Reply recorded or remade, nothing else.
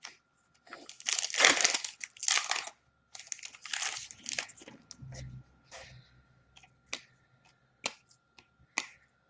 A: recorded